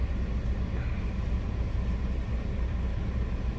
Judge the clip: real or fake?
real